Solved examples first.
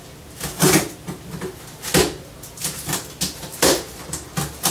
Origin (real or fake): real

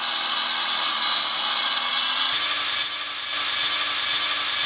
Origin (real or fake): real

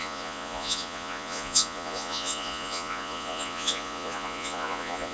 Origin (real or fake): fake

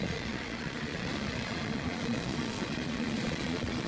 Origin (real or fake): fake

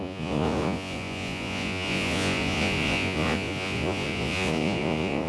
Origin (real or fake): fake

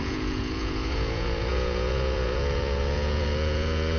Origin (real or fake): fake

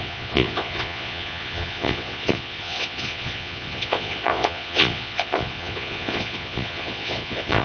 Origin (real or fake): fake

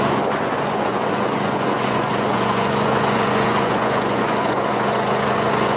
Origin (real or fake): fake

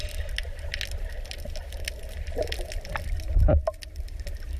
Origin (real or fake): real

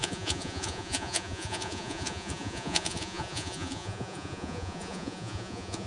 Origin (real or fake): fake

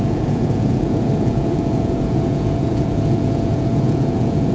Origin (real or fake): fake